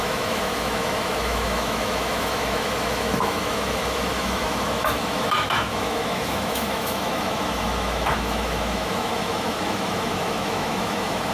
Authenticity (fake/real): fake